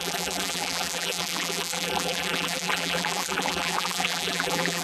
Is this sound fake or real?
fake